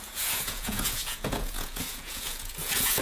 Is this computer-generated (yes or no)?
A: yes